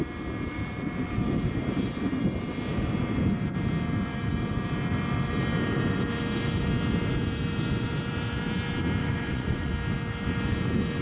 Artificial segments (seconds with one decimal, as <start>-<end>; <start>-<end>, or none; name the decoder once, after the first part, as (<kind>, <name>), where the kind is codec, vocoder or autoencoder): 9.0-9.7 (vocoder, Vocos)